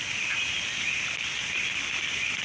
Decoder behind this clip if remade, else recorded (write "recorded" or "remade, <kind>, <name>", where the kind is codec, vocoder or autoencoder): recorded